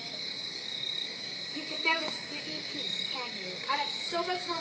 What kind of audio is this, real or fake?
fake